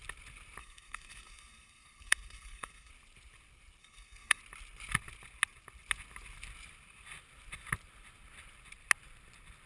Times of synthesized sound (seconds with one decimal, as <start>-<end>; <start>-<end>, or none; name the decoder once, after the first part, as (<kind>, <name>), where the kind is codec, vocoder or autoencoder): 0.6-2.9 (codec, SNAC); 3.8-4.4